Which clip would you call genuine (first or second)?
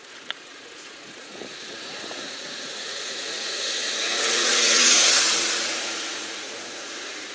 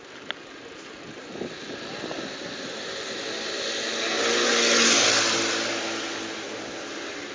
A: second